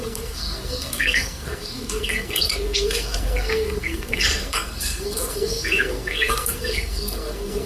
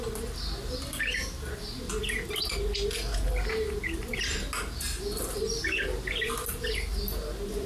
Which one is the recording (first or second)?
second